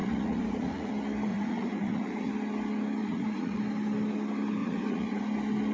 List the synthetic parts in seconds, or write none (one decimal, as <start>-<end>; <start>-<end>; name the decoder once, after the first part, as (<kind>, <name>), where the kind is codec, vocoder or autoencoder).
0.0-0.9 (vocoder, Vocos); 1.3-2.3; 3.0-3.6; 4.6-5.2